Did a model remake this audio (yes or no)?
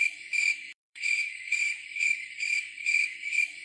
yes